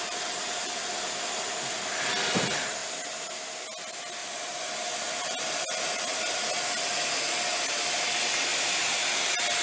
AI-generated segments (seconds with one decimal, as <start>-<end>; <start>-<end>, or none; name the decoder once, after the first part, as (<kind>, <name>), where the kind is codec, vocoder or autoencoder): 4.2-4.7 (vocoder, BigVGAN v2); 5.2-6.1; 8.5-9.1